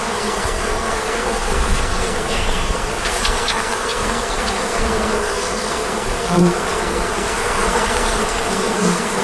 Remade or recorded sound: remade